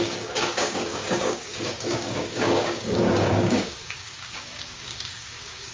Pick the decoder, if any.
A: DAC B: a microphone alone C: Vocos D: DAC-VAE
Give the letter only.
A